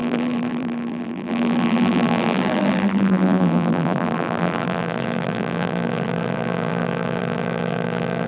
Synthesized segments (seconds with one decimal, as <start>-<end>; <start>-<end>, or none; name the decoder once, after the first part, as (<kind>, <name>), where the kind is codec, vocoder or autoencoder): 0.0-8.3 (vocoder, BigVGAN v2)